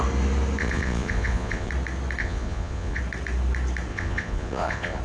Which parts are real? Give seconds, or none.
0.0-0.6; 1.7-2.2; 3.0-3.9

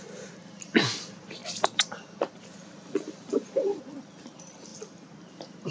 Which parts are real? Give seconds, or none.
0.0-3.3; 3.8-5.7

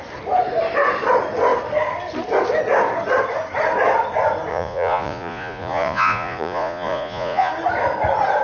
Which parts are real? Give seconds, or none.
0.0-4.5; 7.5-8.4

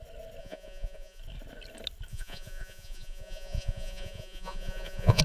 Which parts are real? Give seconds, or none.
0.0-0.4; 1.2-2.1

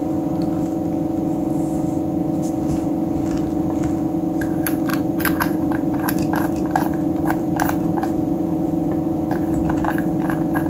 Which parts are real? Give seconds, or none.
0.0-4.9; 9.5-10.7